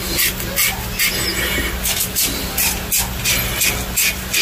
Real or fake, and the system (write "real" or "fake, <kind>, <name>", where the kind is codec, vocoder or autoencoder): real